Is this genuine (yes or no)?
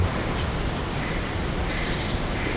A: yes